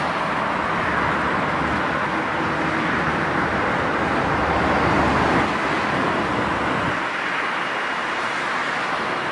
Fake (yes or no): no